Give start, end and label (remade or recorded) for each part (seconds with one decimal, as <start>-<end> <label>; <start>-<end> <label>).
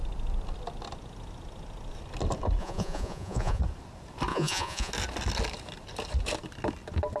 0.0-2.6 recorded; 2.6-3.6 remade; 3.6-4.3 recorded; 4.3-4.9 remade; 4.9-7.2 recorded